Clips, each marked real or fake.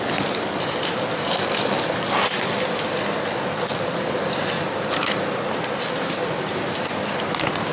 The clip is real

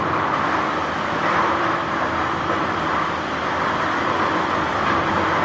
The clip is fake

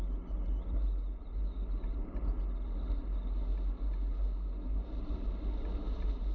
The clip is real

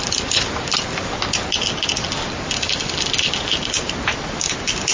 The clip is real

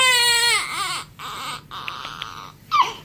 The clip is real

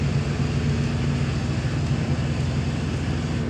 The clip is real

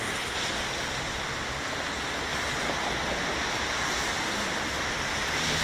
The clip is fake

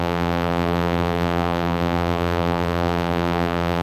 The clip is fake